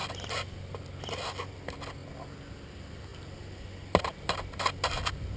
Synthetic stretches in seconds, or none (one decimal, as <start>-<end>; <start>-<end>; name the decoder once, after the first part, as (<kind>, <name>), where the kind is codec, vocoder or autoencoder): none